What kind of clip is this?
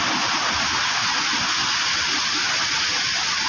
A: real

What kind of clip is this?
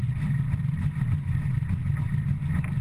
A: real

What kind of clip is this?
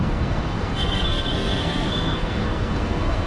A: fake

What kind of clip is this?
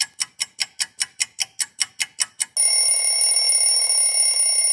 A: real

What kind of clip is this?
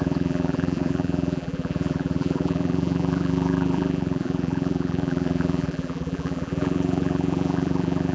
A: fake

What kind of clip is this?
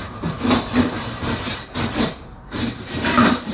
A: fake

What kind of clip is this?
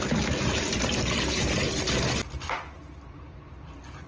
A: real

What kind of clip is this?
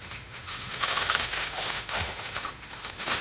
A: fake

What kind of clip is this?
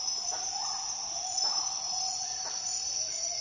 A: real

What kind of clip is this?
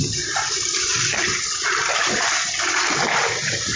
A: real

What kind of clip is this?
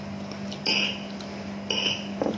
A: real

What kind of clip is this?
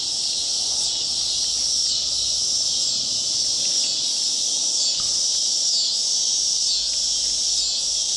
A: real